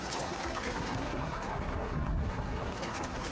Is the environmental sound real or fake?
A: fake